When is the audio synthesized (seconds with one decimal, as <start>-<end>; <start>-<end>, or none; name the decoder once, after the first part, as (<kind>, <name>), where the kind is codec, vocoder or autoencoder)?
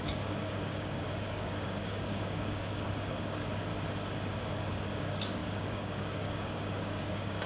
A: 0.0-3.7 (codec, DAC); 4.4-7.5